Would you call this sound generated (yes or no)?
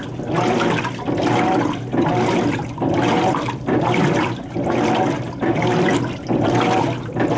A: no